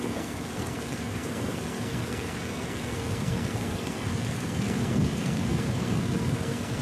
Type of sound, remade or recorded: remade